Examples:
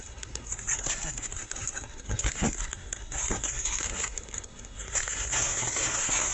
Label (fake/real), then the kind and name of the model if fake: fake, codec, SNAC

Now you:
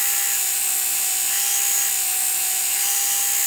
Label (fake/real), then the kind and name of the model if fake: real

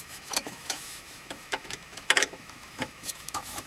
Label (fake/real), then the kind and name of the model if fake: fake, autoencoder, DAC-VAE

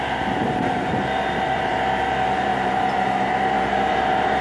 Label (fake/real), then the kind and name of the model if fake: fake, vocoder, BigVGAN v2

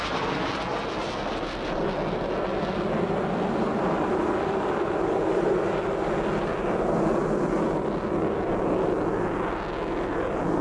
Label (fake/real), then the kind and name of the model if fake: real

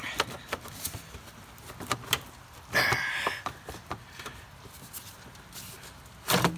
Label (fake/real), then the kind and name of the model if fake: real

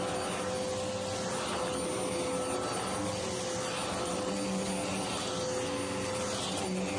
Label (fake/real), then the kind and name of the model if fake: real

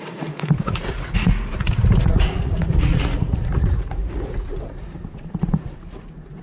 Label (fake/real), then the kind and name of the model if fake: fake, vocoder, Vocos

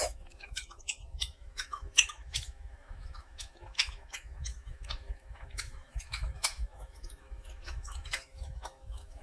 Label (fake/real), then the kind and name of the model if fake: fake, autoencoder, DAC-VAE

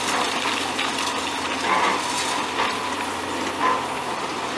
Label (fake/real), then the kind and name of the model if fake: real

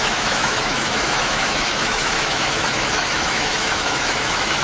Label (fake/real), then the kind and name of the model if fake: fake, autoencoder, DAC-VAE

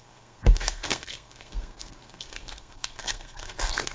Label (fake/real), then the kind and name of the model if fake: fake, codec, SNAC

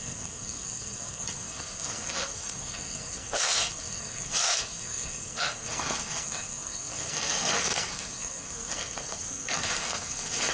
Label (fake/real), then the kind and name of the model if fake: fake, codec, SNAC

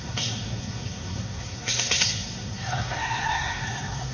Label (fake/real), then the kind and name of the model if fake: fake, codec, SNAC